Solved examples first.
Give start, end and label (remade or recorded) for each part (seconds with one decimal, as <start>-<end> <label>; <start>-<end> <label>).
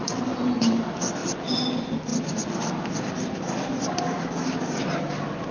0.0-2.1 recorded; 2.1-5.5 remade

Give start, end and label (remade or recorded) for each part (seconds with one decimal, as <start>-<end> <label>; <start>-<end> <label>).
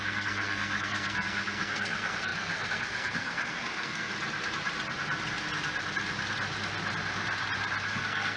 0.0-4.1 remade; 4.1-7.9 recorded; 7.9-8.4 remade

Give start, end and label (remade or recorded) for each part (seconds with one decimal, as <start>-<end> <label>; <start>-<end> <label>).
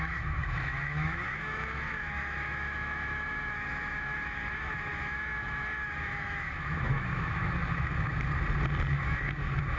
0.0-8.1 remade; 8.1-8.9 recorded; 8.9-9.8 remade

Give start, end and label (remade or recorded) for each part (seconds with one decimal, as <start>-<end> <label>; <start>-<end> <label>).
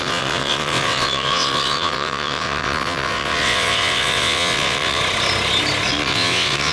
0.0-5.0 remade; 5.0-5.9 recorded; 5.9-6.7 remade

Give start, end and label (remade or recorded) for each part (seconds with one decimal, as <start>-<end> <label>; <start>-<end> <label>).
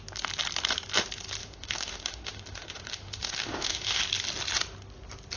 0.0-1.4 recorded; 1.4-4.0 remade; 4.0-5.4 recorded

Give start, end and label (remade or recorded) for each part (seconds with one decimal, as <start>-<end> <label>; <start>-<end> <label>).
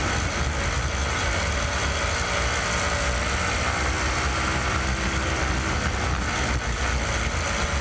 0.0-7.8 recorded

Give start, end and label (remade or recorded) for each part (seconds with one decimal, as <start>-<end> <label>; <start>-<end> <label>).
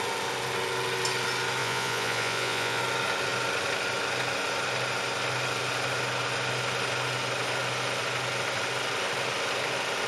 0.0-1.6 recorded; 1.6-2.8 remade; 2.8-10.1 recorded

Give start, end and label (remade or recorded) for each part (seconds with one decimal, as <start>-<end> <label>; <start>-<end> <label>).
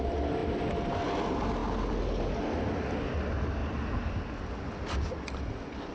0.0-5.9 recorded